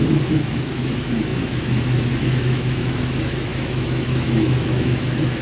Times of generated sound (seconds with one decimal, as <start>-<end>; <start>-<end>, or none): 0.0-5.4